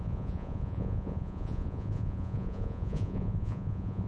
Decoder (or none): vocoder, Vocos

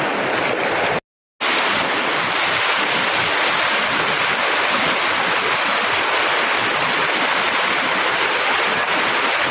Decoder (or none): none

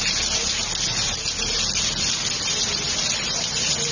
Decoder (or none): none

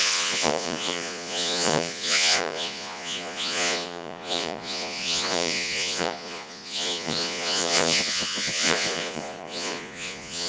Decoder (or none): vocoder, Vocos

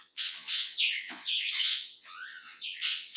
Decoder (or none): vocoder, Vocos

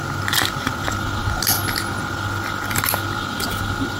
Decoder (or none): none